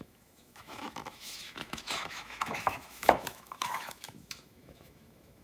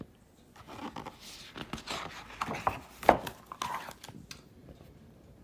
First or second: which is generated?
first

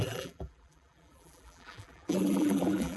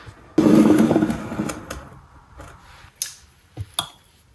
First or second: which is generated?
first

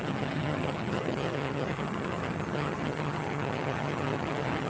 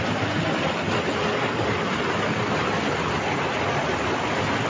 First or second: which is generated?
first